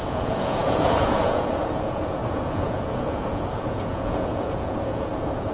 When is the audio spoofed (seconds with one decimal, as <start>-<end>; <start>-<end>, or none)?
0.0-5.5